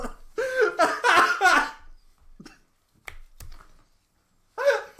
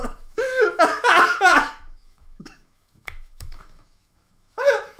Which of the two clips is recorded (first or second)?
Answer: first